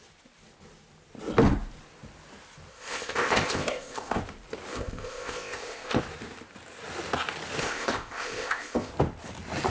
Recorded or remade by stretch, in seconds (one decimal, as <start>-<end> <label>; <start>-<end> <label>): 0.0-2.7 recorded; 2.7-4.2 remade; 4.2-4.7 recorded; 4.7-6.0 remade; 6.0-7.6 recorded; 7.6-8.9 remade; 8.9-9.7 recorded